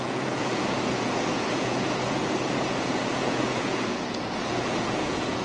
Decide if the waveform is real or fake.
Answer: fake